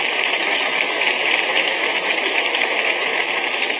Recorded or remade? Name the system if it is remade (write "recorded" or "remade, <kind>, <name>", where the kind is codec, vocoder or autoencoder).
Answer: remade, autoencoder, DAC-VAE